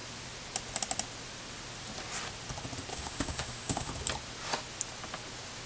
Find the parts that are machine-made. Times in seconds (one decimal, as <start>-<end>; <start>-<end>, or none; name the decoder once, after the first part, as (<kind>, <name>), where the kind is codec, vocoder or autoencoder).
2.9-3.9 (autoencoder, DAC-VAE)